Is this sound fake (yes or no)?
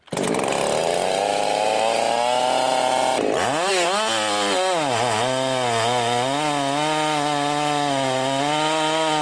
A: no